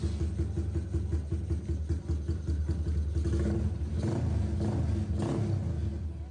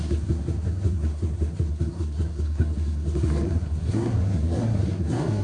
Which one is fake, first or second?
second